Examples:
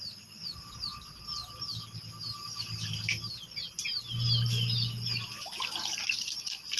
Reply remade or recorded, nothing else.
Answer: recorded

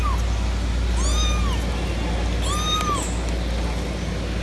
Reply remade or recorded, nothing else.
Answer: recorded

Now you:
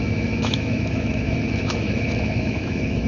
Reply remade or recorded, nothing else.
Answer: remade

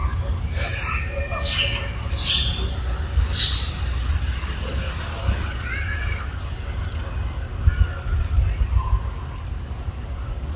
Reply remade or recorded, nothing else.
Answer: recorded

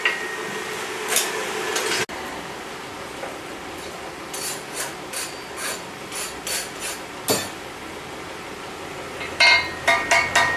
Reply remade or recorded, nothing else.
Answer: recorded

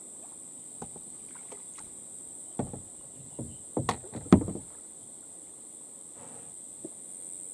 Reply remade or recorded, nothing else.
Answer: recorded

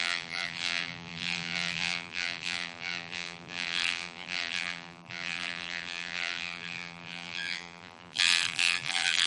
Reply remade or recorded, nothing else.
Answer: remade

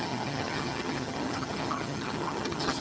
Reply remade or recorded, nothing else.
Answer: remade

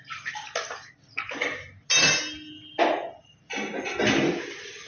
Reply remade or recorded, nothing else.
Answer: recorded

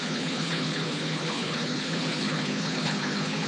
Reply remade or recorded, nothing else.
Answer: remade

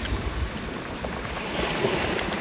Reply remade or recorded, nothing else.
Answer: recorded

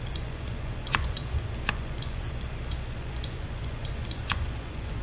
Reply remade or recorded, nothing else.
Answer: remade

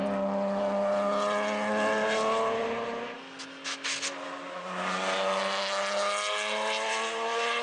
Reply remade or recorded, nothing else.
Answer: recorded